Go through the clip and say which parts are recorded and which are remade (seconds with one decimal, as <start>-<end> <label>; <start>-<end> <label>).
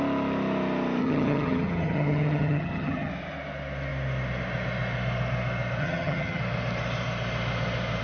0.0-1.0 recorded; 1.0-3.1 remade; 3.1-5.8 recorded; 5.8-6.4 remade; 6.4-8.0 recorded